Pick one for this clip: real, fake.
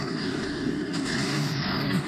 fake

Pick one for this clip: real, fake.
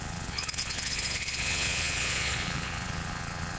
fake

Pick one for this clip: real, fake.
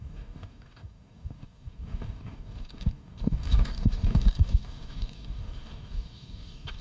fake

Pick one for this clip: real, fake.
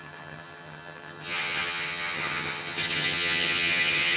fake